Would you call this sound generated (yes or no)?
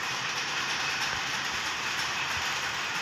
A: yes